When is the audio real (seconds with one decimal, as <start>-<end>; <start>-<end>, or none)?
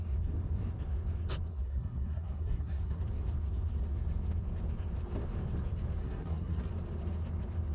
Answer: 0.0-1.5; 3.0-6.0; 6.7-7.7